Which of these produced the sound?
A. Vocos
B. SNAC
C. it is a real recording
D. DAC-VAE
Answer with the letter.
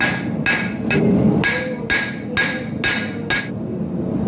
C